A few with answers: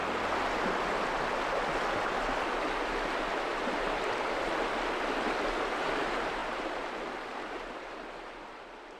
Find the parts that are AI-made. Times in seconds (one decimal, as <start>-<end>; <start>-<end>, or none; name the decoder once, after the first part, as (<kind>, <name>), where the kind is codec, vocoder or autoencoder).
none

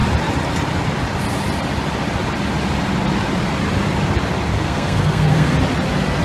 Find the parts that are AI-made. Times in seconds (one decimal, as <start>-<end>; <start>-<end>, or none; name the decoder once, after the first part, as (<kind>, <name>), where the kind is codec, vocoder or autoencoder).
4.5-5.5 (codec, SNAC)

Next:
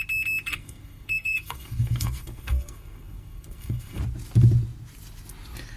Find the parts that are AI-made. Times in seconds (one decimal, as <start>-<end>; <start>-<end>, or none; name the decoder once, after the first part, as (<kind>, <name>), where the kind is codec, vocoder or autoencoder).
0.5-4.0 (codec, SNAC)

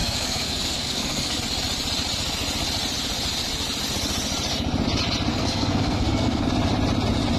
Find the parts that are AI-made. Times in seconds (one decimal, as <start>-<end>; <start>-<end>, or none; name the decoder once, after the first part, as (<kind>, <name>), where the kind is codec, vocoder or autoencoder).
0.0-1.4 (codec, SNAC); 5.3-6.5

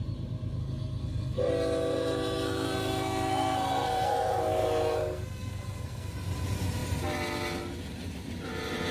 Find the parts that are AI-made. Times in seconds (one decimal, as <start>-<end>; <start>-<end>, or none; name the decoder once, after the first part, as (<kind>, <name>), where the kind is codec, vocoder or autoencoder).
0.6-1.5 (codec, SNAC); 1.9-6.1

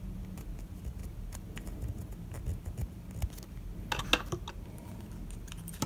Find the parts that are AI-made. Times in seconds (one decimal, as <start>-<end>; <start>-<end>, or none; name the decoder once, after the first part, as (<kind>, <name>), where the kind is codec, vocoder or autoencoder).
none